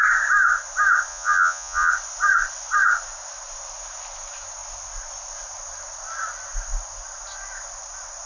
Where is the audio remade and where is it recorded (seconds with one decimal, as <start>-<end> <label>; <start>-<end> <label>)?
0.0-1.1 recorded; 1.1-1.9 remade; 1.9-8.3 recorded